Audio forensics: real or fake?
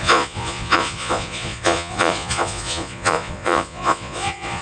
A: fake